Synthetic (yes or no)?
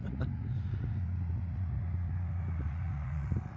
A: yes